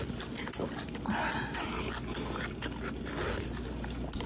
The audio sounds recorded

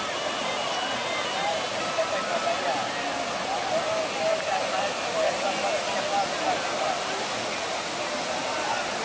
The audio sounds recorded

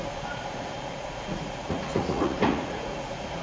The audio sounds remade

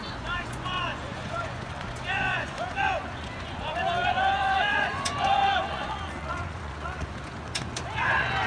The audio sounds remade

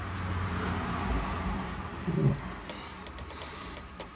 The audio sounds remade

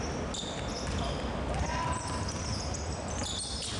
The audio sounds recorded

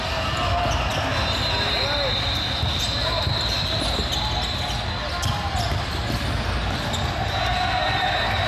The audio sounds recorded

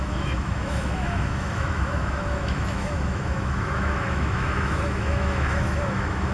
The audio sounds remade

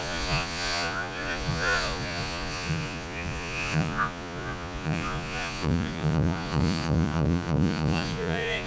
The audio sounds remade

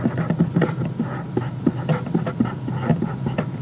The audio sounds recorded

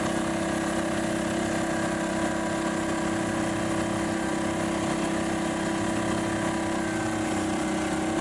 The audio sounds recorded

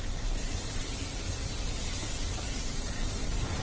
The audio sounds remade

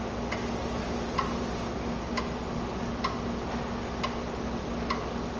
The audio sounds recorded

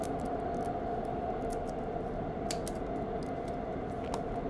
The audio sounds recorded